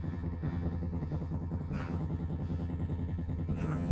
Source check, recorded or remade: remade